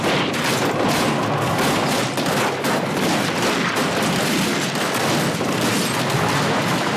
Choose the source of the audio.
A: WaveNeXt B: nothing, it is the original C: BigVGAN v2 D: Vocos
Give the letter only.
B